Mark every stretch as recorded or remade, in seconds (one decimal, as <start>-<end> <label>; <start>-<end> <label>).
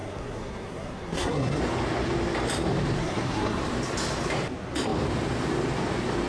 0.0-1.6 remade; 1.6-3.0 recorded; 3.0-3.6 remade; 3.6-6.3 recorded